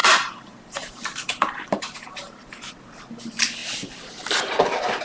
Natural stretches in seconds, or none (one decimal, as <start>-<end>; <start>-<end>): 2.7-5.0